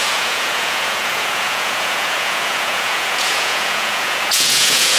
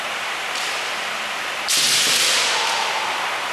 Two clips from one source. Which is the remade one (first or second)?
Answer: first